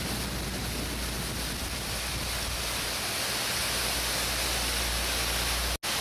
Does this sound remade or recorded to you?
recorded